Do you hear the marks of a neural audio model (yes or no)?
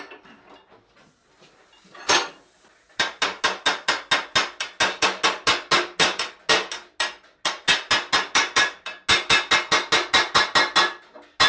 no